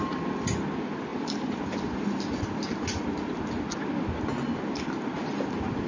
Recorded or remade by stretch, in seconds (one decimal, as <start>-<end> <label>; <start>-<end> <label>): 0.0-1.1 recorded; 1.1-2.4 remade; 2.4-5.9 recorded